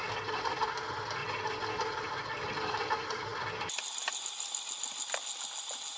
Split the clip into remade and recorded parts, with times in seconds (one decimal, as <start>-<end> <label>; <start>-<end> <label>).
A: 0.0-1.2 recorded; 1.2-2.5 remade; 2.5-6.0 recorded